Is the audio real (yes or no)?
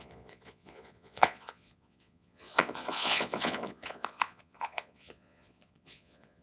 no